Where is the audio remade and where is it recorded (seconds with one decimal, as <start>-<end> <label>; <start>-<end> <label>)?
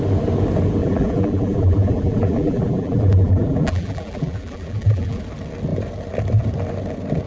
0.0-0.8 recorded; 0.8-5.2 remade; 5.2-7.3 recorded